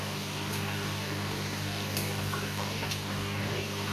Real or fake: fake